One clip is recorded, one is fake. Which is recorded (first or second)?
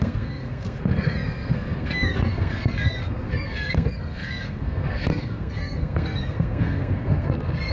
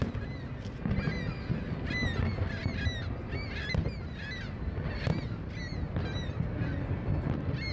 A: second